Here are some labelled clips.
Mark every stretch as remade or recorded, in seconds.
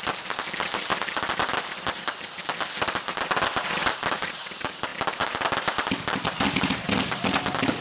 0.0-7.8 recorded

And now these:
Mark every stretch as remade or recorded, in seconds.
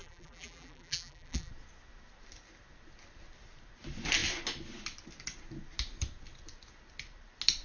0.0-1.5 remade; 1.5-7.6 recorded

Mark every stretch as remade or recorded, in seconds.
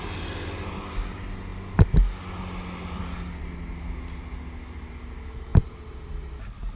0.0-5.5 recorded; 5.5-6.1 remade; 6.1-6.8 recorded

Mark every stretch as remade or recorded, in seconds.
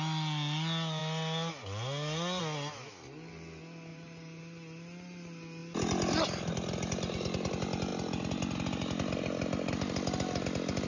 0.0-3.9 recorded; 3.9-4.4 remade; 4.4-10.9 recorded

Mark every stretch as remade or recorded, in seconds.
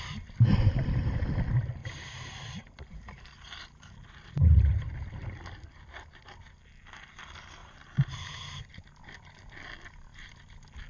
0.0-1.8 recorded; 1.8-4.9 remade; 4.9-7.6 recorded; 7.6-8.3 remade; 8.3-10.9 recorded